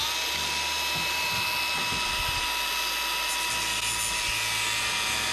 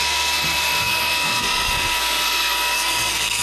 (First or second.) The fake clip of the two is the second